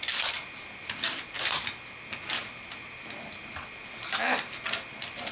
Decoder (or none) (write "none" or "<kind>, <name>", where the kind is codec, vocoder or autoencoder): none